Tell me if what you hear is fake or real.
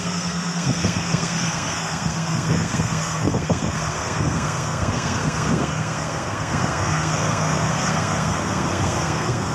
fake